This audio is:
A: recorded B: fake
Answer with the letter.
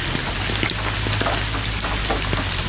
A